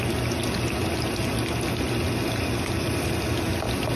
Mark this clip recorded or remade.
recorded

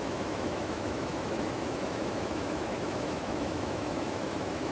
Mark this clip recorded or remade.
remade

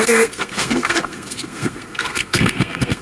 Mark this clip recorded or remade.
remade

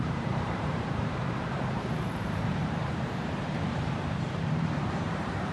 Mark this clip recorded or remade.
remade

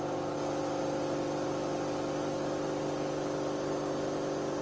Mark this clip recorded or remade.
recorded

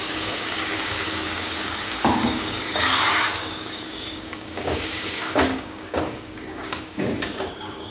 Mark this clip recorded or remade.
remade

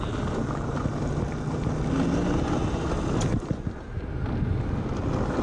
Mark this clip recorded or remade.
recorded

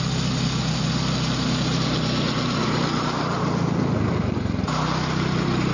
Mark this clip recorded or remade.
recorded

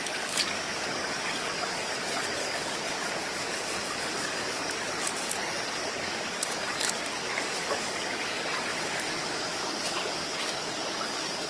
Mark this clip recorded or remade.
remade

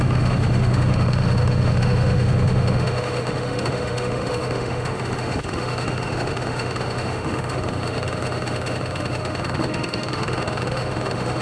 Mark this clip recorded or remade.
remade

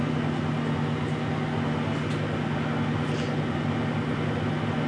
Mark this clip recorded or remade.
recorded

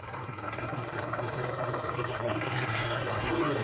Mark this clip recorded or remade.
remade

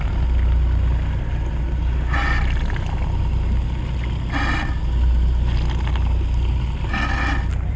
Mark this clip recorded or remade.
recorded